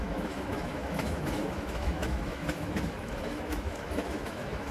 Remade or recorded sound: remade